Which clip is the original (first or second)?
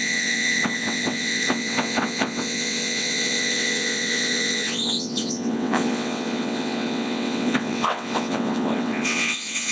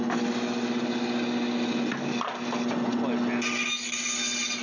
second